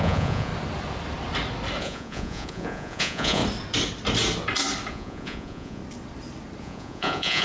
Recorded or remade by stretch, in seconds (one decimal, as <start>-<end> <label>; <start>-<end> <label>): 0.0-0.5 remade; 0.5-1.8 recorded; 1.8-3.4 remade; 3.4-4.9 recorded; 4.9-5.8 remade; 5.8-6.6 recorded; 6.6-7.4 remade